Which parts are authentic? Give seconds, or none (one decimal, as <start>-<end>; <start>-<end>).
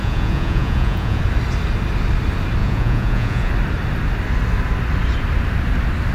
1.2-2.6; 3.5-6.1